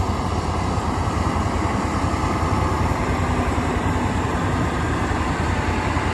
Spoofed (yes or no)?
no